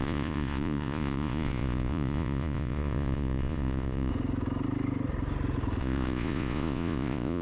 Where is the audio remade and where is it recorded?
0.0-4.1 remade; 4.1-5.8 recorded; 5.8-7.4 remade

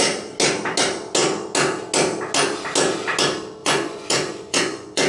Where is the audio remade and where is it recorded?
0.0-3.6 recorded; 3.6-5.1 remade

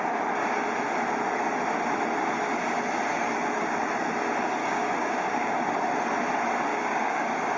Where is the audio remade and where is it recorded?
0.0-4.6 recorded; 4.6-5.7 remade; 5.7-6.7 recorded; 6.7-7.6 remade

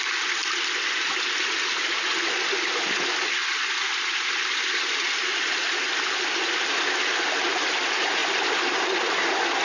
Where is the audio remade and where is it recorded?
0.0-9.6 recorded

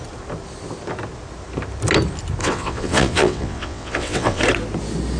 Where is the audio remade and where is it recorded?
0.0-2.4 recorded; 2.4-4.4 remade; 4.4-5.2 recorded

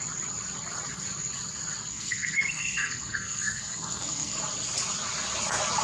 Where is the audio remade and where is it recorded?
0.0-1.9 recorded; 1.9-4.4 remade; 4.4-5.8 recorded

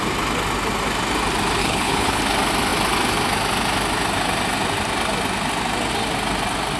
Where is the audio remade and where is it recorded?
0.0-1.6 recorded; 1.6-2.2 remade; 2.2-6.8 recorded